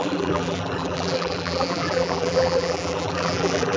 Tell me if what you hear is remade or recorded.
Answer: remade